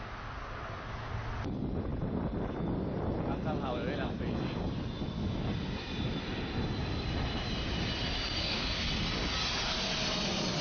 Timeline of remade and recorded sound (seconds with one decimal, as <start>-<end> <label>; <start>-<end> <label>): 0.0-8.4 recorded; 8.4-8.9 remade; 8.9-10.6 recorded